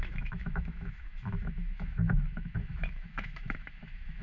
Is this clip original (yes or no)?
no